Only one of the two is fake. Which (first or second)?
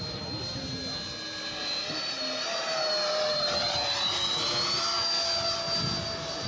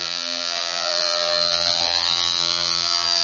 second